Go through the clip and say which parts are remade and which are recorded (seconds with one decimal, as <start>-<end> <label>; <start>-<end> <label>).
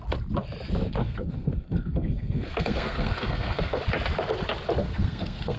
0.0-1.0 recorded; 1.0-3.8 remade; 3.8-4.8 recorded; 4.8-5.6 remade